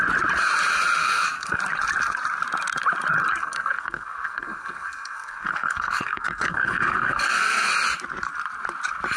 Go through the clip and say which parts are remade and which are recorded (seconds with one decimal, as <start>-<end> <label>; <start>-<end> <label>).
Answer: 0.0-1.0 recorded; 1.0-1.6 remade; 1.6-3.4 recorded; 3.4-7.7 remade; 7.7-9.2 recorded